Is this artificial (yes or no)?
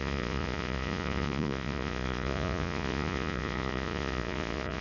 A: yes